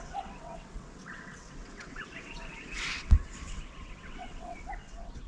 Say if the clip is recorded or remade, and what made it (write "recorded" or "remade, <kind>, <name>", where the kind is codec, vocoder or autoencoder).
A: remade, vocoder, WaveNeXt